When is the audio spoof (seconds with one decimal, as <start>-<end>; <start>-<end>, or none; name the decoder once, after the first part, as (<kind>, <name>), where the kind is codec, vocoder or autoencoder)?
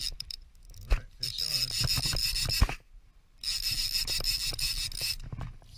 0.0-1.5 (vocoder, BigVGAN v2)